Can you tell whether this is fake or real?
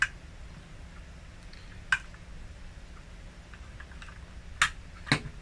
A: real